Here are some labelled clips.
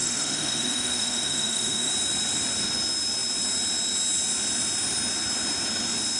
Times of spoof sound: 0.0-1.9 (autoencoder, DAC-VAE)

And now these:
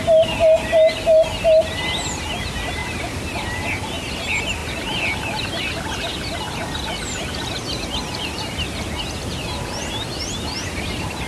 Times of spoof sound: none

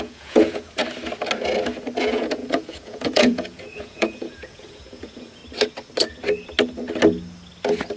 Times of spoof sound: 0.0-0.8 (vocoder, Vocos); 2.0-5.4

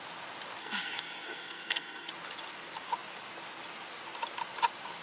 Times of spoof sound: 0.6-2.1 (codec, SNAC)

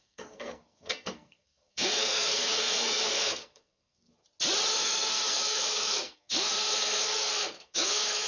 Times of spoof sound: 0.0-4.1 (codec, SNAC); 4.7-8.3

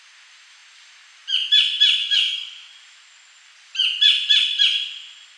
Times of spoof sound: 2.0-2.7 (autoencoder, DAC-VAE)

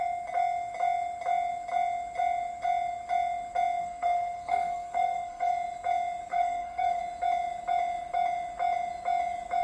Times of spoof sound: 3.8-5.5 (codec, SNAC); 6.3-7.0

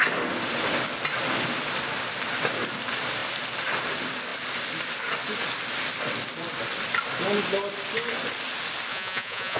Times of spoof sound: 8.9-9.6 (vocoder, Vocos)